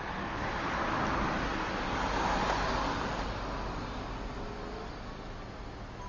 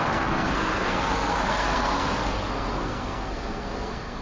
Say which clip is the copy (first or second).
second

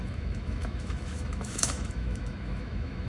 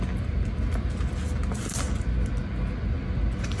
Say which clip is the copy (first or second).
first